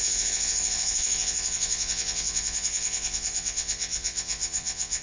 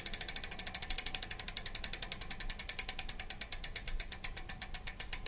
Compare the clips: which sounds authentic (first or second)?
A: second